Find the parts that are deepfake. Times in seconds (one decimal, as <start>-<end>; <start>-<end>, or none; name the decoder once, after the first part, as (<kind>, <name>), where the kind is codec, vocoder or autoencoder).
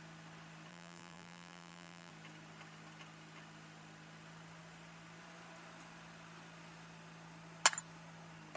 0.7-2.1 (vocoder, BigVGAN v2)